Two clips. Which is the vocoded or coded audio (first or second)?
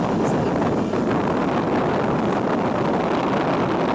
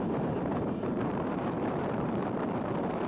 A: second